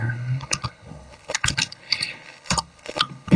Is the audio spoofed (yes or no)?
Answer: yes